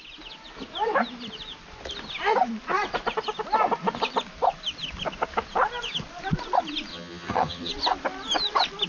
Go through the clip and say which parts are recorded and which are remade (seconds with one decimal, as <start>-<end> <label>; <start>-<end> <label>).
0.0-6.9 recorded; 6.9-7.7 remade; 7.7-8.9 recorded